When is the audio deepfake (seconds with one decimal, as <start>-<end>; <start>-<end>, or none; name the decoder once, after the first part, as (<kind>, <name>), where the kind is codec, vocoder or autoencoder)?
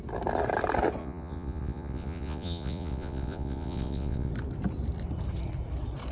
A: 1.0-4.3 (vocoder, Vocos)